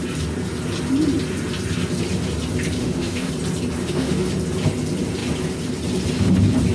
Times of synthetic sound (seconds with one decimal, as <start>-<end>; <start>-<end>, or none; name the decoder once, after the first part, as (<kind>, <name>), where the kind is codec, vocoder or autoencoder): 2.8-3.3 (autoencoder, DAC-VAE); 3.8-4.3